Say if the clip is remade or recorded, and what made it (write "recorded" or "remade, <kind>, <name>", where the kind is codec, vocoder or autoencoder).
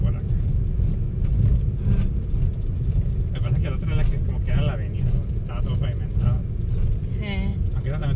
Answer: recorded